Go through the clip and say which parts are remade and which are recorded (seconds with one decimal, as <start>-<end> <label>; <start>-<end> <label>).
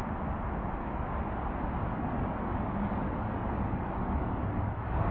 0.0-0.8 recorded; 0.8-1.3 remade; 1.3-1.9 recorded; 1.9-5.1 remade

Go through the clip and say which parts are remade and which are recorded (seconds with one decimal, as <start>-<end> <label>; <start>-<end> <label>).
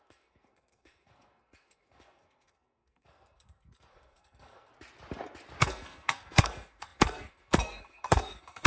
0.0-4.7 remade; 4.7-5.6 recorded; 5.6-8.7 remade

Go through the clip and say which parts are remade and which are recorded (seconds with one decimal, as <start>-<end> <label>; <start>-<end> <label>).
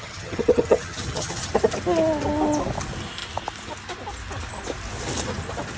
0.0-1.5 remade; 1.5-5.8 recorded